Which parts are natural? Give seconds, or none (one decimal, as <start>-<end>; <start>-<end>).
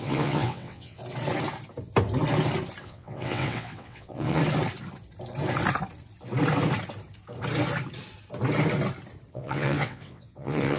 1.0-2.8; 4.4-9.3